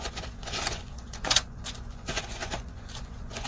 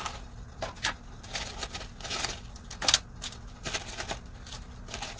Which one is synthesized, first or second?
first